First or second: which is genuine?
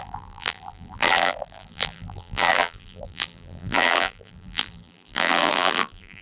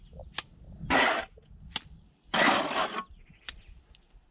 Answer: second